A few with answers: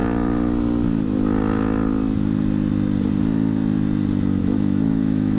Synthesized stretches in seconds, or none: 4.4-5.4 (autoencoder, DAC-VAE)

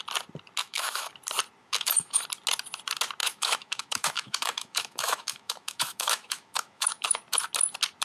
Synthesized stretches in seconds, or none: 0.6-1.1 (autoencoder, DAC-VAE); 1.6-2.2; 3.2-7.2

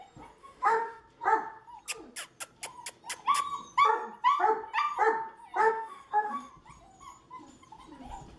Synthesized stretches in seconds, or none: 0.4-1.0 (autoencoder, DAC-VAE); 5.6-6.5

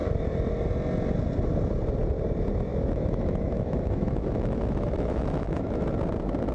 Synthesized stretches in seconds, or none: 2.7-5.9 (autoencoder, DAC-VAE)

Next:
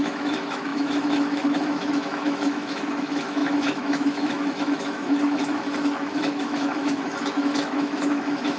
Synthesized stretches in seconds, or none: 0.0-8.6 (autoencoder, DAC-VAE)

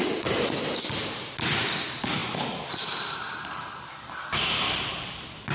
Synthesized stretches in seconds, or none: none